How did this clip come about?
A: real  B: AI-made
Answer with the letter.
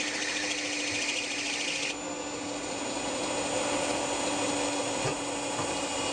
A